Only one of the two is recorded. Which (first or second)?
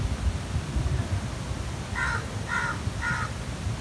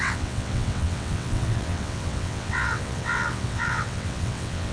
first